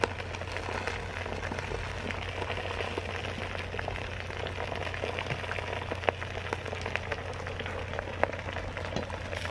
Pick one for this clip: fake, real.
real